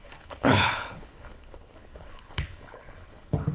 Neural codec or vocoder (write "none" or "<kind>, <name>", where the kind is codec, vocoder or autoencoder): codec, HILCodec